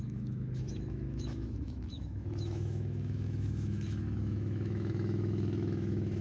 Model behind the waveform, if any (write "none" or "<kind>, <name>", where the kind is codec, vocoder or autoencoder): autoencoder, DAC-VAE